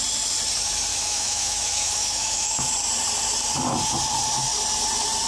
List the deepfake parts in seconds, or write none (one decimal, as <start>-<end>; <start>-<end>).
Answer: 0.9-2.7

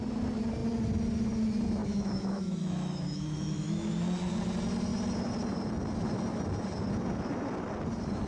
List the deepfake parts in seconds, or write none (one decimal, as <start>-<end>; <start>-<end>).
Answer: 1.8-3.9

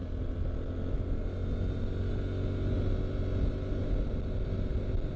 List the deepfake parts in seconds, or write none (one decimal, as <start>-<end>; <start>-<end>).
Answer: none

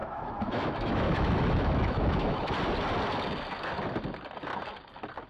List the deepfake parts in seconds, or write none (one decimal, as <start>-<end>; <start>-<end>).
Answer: 0.0-2.5